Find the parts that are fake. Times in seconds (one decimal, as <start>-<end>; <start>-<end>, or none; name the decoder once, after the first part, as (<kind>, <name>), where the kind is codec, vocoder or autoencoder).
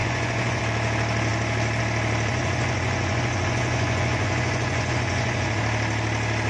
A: 0.0-0.6 (vocoder, Vocos); 2.3-5.6